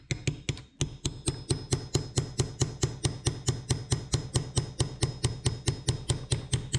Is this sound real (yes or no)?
yes